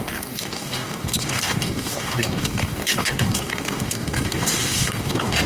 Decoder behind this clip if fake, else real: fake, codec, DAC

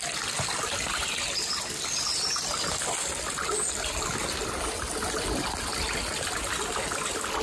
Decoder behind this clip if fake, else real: real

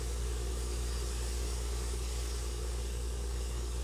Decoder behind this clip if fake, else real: fake, codec, DAC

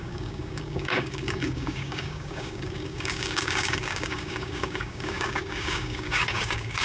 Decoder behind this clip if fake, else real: fake, codec, DAC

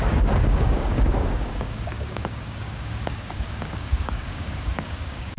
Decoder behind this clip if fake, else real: fake, codec, DAC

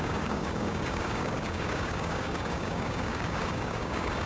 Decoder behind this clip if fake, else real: fake, codec, DAC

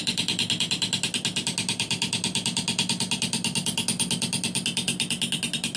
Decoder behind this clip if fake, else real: real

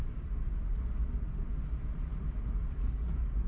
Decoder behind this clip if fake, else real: real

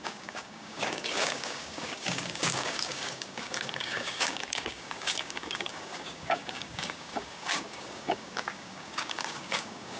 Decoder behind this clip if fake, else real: fake, codec, DAC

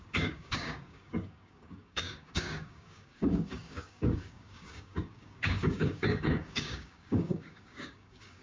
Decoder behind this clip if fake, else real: fake, codec, DAC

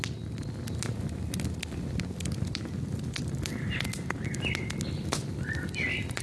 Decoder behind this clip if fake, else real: real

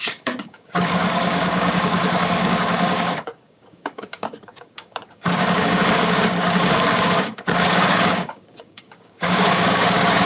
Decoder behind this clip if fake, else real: fake, codec, DAC